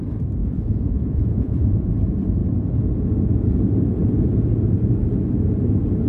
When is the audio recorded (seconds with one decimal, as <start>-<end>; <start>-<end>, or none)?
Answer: 0.0-0.4; 1.9-6.1